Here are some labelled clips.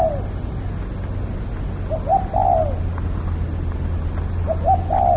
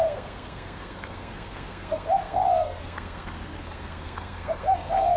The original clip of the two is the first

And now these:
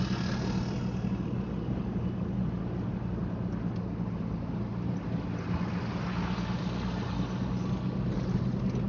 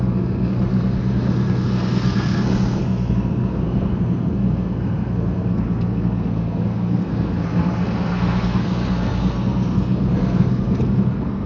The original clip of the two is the first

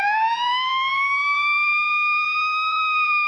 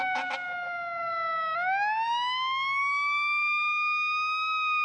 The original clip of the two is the second